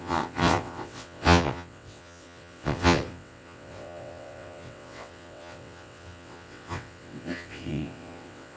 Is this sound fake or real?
fake